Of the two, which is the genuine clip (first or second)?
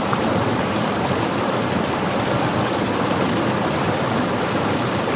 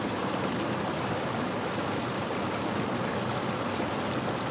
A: second